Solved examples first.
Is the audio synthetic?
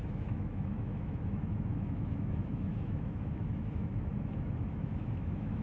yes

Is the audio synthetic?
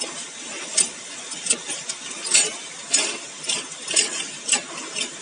no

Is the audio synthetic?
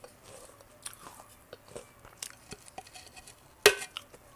no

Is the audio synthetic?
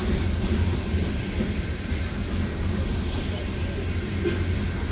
no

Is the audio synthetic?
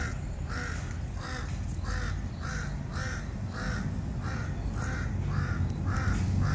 no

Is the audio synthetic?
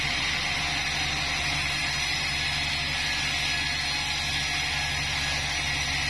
no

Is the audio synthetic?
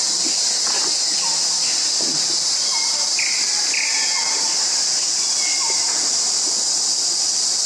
no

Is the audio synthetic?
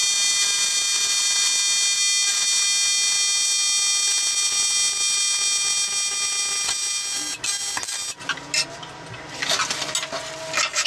no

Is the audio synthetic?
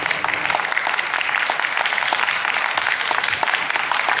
no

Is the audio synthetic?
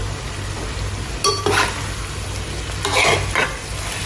no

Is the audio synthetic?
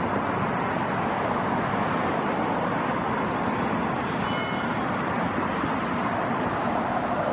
no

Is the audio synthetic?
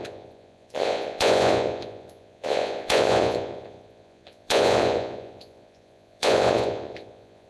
yes